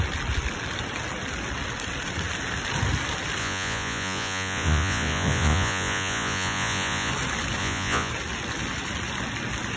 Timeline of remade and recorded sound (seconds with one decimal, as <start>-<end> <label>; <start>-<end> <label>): 0.0-3.4 recorded; 3.4-7.1 remade; 7.1-7.6 recorded; 7.6-8.1 remade; 8.1-9.8 recorded